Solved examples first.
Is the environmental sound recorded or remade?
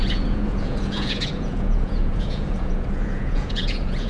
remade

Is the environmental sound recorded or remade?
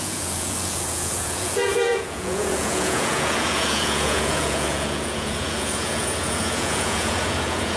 remade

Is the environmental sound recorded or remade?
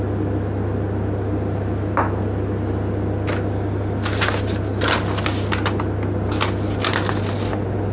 recorded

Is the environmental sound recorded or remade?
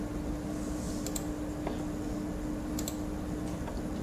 recorded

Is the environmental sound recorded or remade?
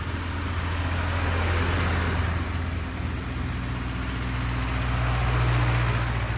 recorded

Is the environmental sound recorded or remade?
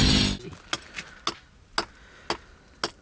recorded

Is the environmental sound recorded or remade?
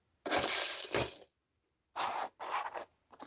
recorded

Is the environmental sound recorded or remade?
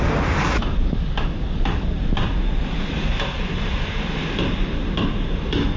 recorded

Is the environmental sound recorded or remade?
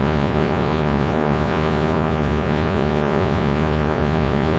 remade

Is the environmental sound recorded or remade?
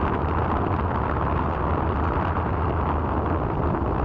recorded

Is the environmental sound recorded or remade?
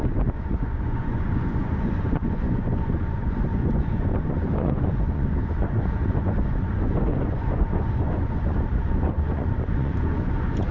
remade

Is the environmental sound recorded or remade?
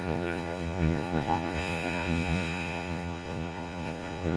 remade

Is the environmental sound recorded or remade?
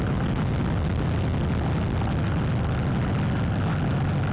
recorded